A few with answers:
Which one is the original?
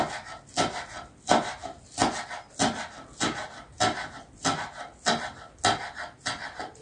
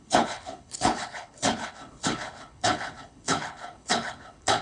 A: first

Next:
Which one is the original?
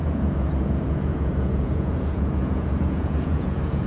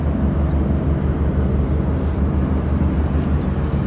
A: second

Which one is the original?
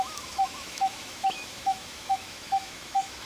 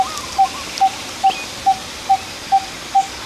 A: second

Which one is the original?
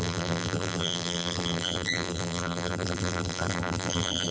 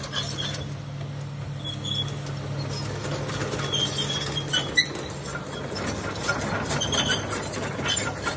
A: second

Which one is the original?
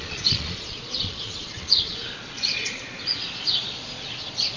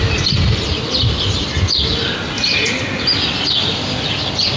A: second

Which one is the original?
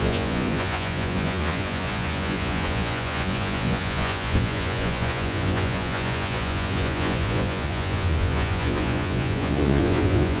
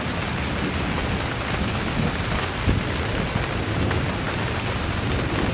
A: second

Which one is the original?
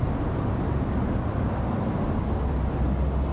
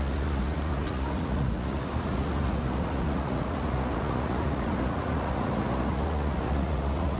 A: first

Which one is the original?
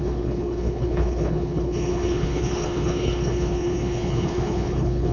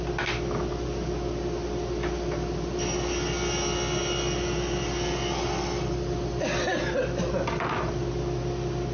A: second